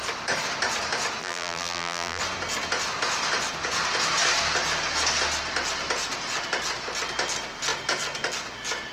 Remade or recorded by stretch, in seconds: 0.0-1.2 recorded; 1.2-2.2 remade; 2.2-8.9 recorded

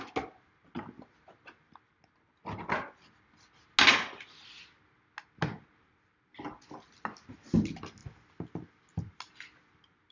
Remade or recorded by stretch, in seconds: 0.0-10.1 recorded